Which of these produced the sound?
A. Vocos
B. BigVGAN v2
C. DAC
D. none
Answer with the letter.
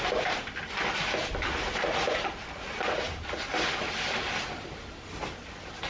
D